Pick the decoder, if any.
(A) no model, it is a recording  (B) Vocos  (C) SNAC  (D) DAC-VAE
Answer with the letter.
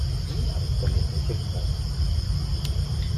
A